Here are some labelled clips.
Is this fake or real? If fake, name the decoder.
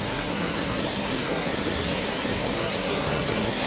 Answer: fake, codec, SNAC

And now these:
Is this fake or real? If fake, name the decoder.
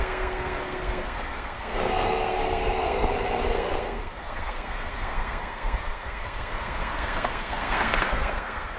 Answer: fake, codec, SNAC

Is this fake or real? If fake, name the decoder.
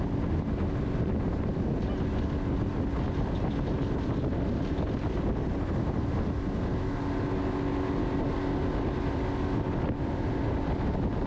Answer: real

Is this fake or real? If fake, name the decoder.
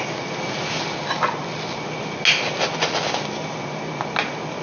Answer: real